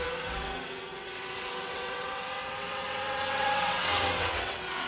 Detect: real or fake fake